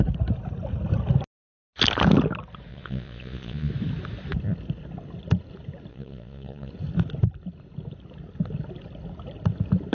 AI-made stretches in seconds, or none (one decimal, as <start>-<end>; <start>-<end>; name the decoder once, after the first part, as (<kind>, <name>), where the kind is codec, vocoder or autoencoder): 2.7-3.7 (vocoder, Vocos); 5.9-6.7